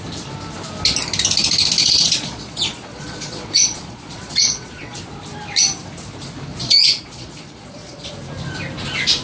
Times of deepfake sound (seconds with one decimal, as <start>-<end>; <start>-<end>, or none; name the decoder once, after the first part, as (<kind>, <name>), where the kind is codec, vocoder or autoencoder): 1.8-5.0 (vocoder, Vocos); 6.5-8.1